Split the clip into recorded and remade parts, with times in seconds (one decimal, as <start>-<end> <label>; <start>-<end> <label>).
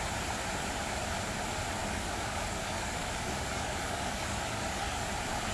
0.0-1.8 recorded; 1.8-5.1 remade; 5.1-5.5 recorded